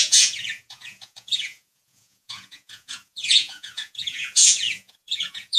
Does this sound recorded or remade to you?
remade